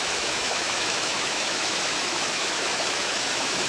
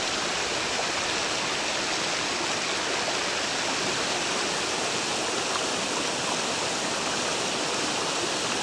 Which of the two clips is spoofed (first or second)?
first